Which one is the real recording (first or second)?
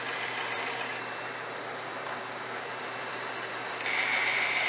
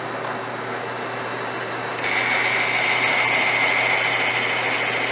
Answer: second